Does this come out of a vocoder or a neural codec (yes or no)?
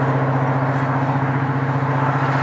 no